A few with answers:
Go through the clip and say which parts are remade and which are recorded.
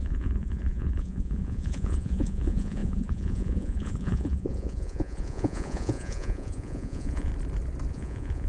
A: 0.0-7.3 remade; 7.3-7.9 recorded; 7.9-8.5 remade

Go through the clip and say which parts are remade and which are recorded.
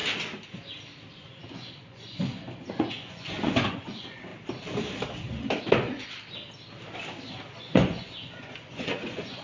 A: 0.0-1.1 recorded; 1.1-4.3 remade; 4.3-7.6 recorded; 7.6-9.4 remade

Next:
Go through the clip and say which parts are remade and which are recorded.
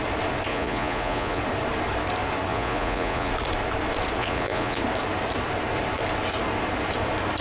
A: 0.0-0.5 recorded; 0.5-1.4 remade; 1.4-2.5 recorded; 2.5-3.3 remade; 3.3-4.2 recorded; 4.2-4.8 remade; 4.8-7.4 recorded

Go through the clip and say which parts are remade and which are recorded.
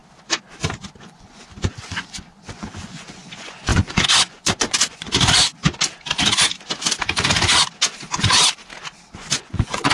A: 0.0-1.0 recorded; 1.0-5.6 remade; 5.6-9.1 recorded; 9.1-9.9 remade